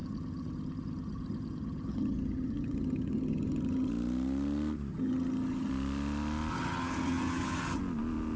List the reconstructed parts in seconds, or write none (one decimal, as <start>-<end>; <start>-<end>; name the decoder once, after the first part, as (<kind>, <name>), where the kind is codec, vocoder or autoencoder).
0.0-3.9 (vocoder, HiFi-GAN); 4.9-5.7; 6.5-7.8